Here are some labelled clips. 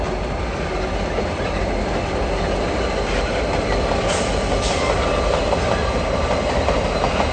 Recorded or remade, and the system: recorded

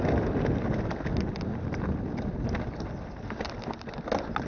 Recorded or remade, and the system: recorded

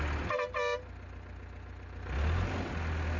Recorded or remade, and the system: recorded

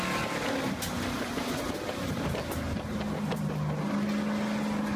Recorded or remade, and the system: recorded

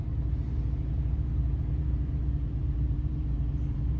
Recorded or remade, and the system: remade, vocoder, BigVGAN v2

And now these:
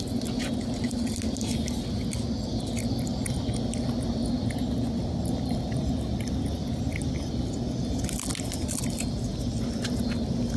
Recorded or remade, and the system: recorded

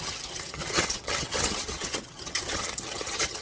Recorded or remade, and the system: remade, vocoder, HiFi-GAN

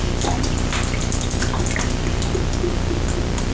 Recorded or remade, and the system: recorded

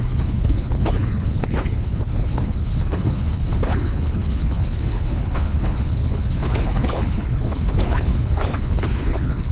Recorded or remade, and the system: remade, codec, HILCodec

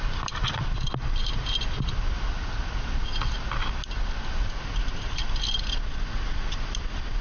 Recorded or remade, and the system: recorded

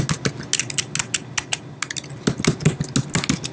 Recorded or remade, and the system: recorded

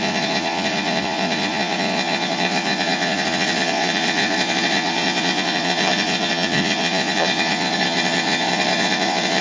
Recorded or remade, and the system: remade, vocoder, Vocos